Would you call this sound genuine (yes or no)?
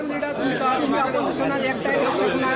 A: yes